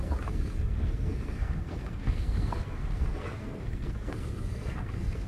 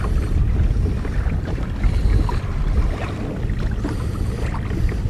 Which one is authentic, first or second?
second